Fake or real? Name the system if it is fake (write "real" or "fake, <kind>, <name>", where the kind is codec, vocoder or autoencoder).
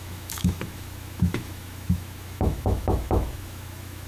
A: fake, autoencoder, DAC-VAE